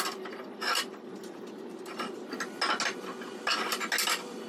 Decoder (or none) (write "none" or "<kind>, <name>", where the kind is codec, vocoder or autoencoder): none